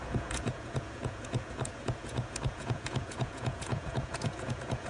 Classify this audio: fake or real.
fake